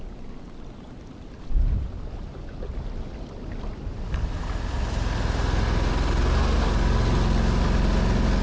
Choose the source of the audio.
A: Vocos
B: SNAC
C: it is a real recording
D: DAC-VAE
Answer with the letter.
C